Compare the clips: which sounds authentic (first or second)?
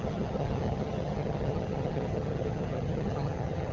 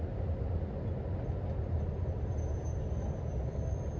second